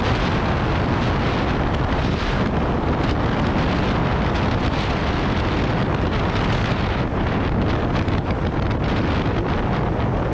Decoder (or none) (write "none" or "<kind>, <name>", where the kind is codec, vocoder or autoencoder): none